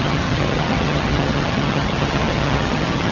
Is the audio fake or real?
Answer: fake